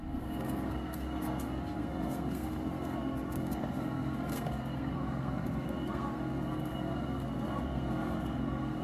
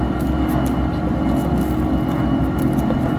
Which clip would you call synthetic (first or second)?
first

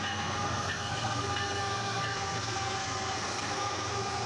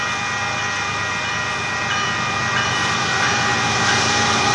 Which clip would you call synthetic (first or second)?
first